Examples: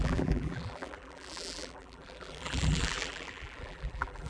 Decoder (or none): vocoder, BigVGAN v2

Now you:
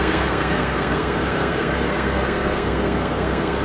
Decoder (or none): codec, SNAC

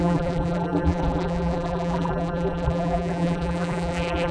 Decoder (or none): vocoder, BigVGAN v2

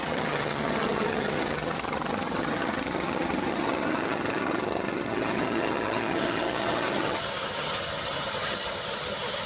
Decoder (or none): vocoder, HiFi-GAN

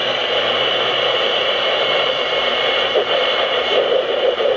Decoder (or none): vocoder, BigVGAN v2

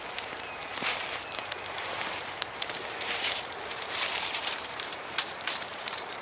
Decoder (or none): vocoder, BigVGAN v2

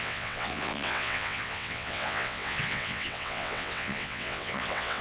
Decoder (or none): vocoder, WaveNeXt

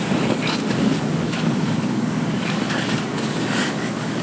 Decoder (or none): codec, DAC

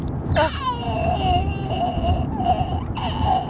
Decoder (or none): none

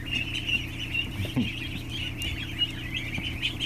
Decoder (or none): none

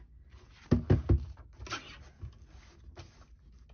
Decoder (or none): none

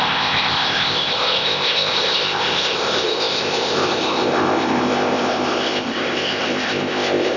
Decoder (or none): codec, ZipCodec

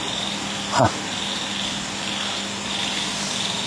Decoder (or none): none